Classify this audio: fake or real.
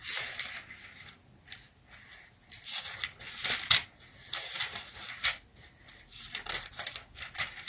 real